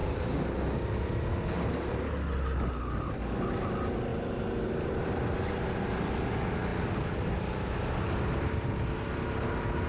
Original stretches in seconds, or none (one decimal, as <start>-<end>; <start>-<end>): 0.0-9.9